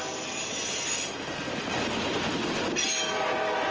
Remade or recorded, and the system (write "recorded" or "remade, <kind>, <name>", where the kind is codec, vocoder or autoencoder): recorded